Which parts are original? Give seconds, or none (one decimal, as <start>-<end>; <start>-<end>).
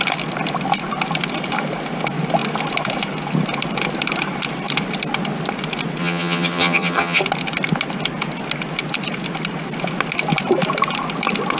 0.0-6.0; 7.2-11.6